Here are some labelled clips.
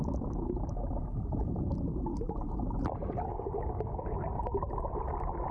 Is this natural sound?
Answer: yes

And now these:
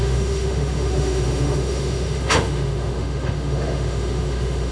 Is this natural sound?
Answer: no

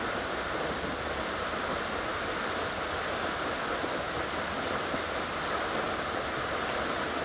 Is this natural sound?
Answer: yes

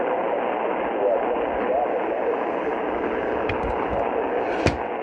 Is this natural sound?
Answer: yes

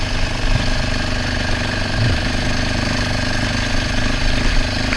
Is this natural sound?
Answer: yes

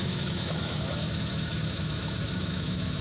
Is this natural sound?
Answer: no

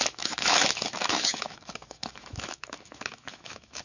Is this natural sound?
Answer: no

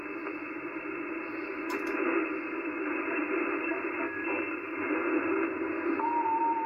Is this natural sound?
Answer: yes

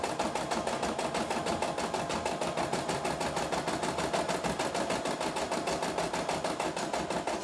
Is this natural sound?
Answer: yes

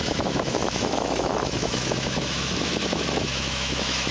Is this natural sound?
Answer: no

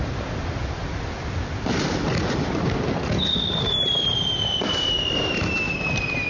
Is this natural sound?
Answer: yes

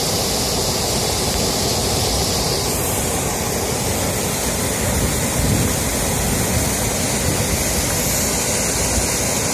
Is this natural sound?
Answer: yes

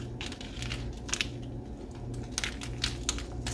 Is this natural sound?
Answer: yes